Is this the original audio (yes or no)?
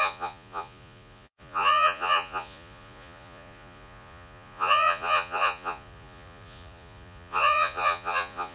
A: no